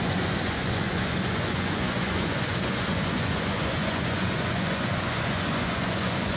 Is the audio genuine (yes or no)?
no